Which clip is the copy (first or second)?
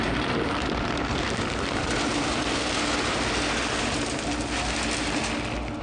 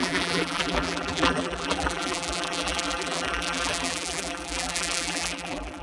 second